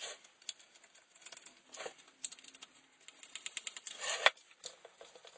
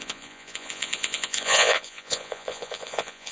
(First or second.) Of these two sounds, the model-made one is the second